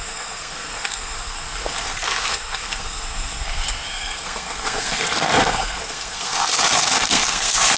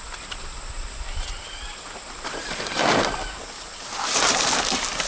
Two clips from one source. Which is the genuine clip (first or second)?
second